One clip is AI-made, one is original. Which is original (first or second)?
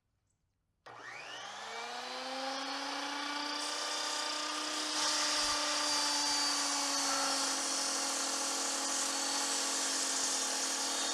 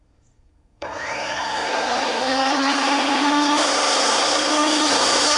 first